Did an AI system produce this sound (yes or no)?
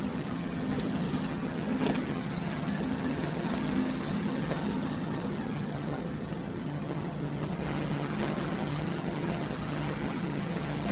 yes